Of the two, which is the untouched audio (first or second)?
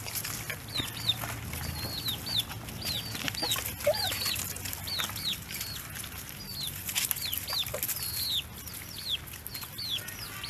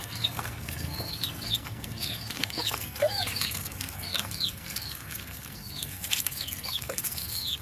first